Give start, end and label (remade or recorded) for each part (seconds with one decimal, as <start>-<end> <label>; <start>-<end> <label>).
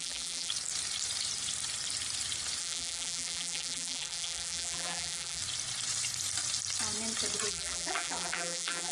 0.0-0.5 remade; 0.5-2.6 recorded; 2.6-5.4 remade; 5.4-7.5 recorded; 7.5-8.9 remade